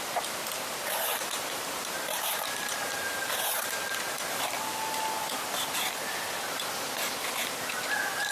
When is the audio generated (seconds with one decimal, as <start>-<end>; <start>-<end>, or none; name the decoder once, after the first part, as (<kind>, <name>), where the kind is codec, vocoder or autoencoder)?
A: 1.1-3.6 (vocoder, BigVGAN v2)